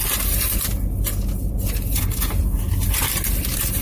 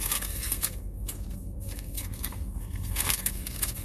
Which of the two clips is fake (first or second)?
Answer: second